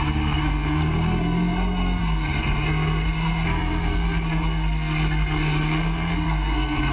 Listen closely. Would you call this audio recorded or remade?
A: remade